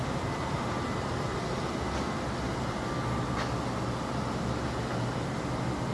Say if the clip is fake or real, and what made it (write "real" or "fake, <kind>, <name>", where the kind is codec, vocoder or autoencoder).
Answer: real